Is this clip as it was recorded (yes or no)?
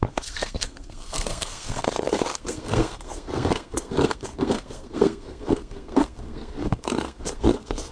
no